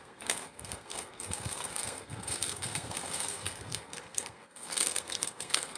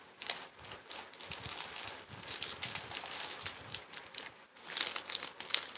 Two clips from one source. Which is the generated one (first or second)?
first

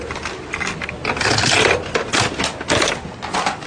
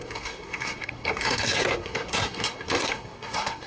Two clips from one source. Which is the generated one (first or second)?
second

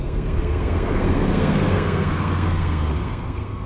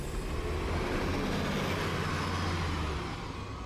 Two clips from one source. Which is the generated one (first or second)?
first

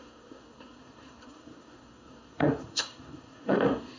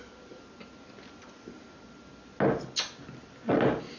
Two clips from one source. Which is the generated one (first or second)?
first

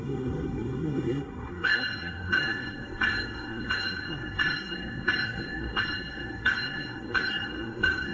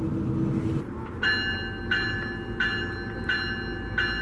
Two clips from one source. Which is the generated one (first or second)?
first